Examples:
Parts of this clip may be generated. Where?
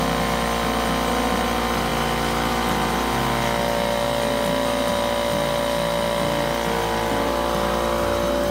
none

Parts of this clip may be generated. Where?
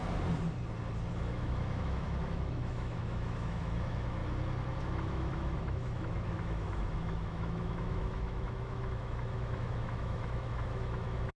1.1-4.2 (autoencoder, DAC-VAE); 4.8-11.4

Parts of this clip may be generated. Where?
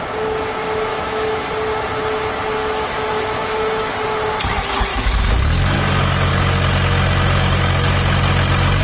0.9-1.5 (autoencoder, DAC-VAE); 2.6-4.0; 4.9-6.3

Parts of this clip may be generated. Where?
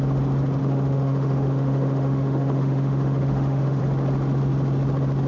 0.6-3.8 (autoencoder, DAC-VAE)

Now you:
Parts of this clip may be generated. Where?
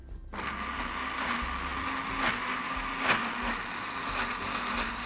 none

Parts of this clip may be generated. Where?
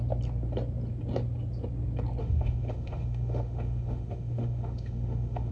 2.2-5.5 (autoencoder, DAC-VAE)